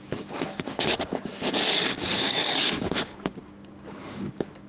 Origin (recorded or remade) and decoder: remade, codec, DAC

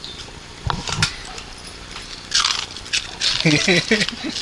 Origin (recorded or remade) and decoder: recorded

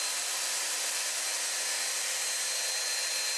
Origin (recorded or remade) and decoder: recorded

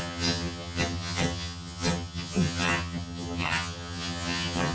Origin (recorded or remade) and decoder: remade, vocoder, HiFi-GAN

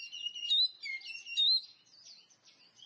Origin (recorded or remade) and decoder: recorded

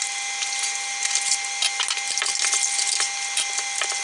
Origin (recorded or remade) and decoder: recorded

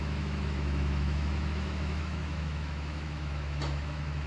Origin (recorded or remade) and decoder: remade, autoencoder, DAC-VAE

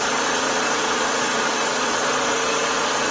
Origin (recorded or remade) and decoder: recorded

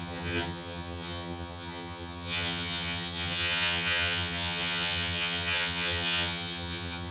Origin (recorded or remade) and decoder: remade, vocoder, HiFi-GAN